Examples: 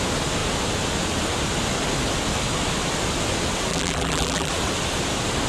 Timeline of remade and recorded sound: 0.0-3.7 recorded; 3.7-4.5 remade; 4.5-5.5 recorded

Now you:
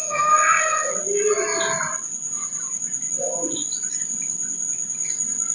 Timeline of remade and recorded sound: 0.0-0.9 remade; 0.9-5.5 recorded